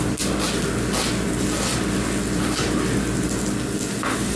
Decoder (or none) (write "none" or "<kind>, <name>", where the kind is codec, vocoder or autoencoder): none